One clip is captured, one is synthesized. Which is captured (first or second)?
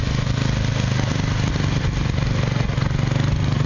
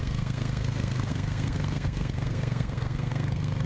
first